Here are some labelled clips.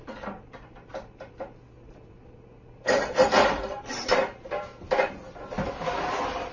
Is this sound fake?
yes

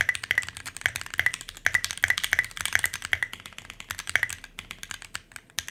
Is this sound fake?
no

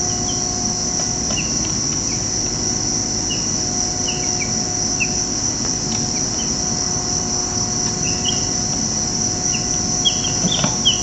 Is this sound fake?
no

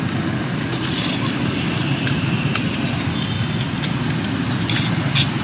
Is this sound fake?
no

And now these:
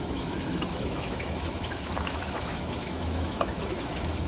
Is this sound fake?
yes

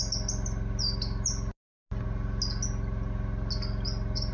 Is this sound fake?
no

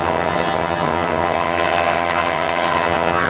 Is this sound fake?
yes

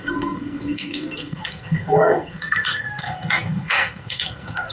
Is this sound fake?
yes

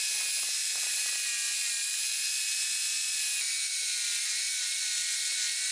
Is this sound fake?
no